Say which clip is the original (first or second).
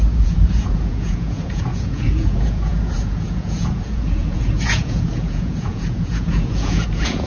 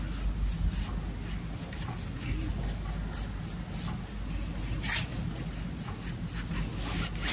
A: second